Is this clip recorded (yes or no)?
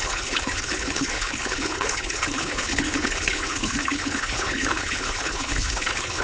no